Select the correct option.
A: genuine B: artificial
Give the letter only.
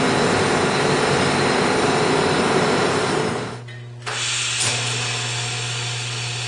A